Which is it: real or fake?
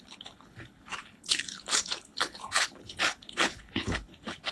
fake